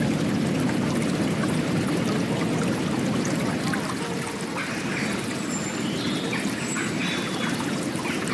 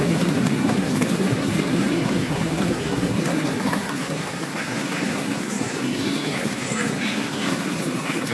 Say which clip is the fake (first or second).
second